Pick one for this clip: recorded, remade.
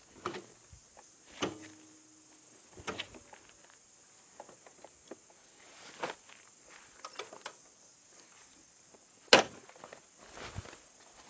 recorded